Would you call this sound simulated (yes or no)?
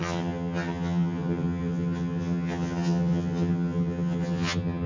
yes